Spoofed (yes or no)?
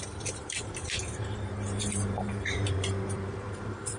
yes